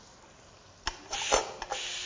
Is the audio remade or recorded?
recorded